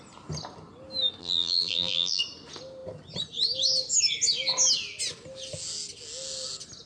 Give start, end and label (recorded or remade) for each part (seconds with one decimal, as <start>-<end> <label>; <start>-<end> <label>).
0.0-1.2 recorded; 1.2-2.2 remade; 2.2-6.9 recorded